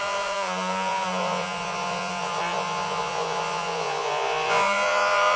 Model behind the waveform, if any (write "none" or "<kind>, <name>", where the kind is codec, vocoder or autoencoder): vocoder, Vocos